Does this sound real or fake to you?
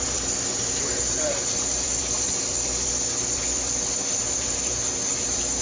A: fake